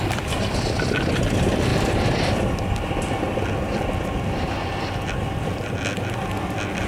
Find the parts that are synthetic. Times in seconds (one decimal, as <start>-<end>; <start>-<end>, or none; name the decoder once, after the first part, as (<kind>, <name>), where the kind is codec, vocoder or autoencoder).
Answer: none